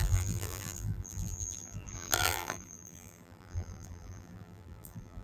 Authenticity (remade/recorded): remade